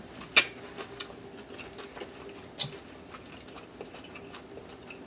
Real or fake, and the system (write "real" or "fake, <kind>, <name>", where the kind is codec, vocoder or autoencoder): real